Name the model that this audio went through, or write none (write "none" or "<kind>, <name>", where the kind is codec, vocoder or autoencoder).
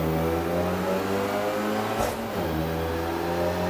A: none